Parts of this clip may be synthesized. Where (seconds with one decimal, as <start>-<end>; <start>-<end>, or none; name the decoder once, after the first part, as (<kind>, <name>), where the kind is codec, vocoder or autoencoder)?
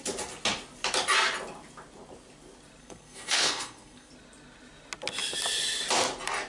2.8-4.1 (codec, SNAC)